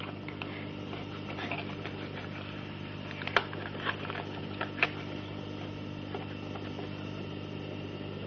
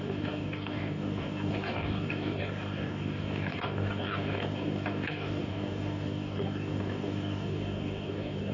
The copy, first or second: second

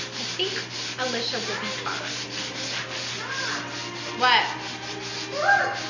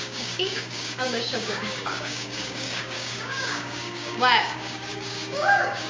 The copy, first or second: second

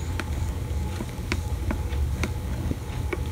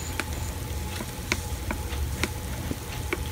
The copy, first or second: first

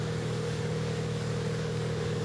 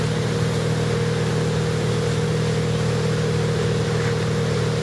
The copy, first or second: first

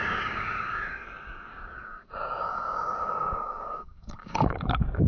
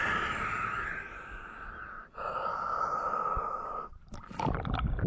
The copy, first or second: first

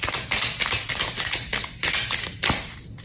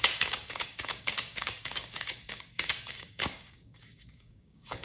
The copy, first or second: second